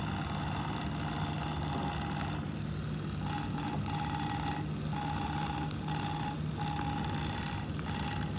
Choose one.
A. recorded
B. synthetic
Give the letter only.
A